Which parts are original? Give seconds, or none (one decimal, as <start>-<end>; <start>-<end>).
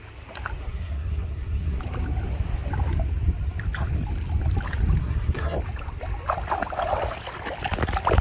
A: 0.0-0.6; 1.8-5.0; 5.6-8.2